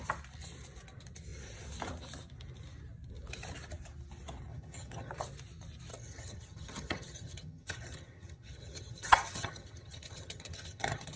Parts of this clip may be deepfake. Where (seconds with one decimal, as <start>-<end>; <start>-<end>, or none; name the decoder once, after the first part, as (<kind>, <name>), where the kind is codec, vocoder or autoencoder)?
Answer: 4.5-5.1 (vocoder, HiFi-GAN); 5.9-11.2

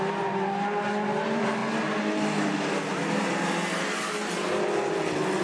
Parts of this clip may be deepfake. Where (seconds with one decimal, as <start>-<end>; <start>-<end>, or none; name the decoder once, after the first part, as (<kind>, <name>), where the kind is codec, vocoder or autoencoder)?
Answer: 0.0-1.6 (vocoder, BigVGAN v2); 4.8-5.4